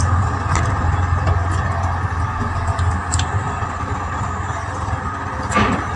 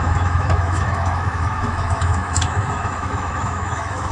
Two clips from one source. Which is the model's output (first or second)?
second